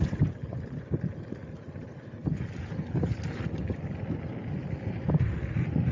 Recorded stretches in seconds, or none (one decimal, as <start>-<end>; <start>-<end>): 0.0-5.9